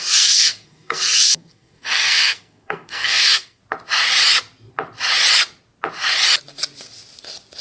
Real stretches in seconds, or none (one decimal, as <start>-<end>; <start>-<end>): 3.6-7.6